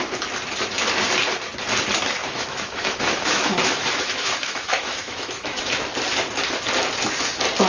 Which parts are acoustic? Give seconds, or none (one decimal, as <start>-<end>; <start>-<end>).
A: 0.0-2.2; 5.8-7.7